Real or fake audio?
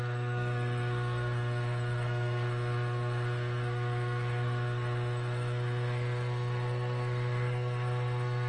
fake